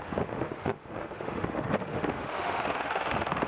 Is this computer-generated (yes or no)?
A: yes